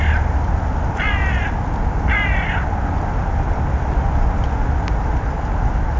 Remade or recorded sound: recorded